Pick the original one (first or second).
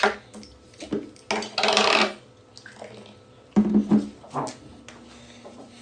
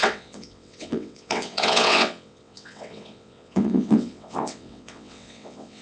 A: first